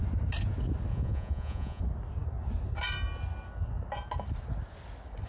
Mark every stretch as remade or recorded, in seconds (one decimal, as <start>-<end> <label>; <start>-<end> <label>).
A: 0.0-0.9 recorded; 0.9-1.8 remade; 1.8-5.3 recorded